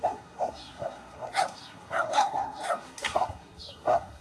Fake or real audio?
fake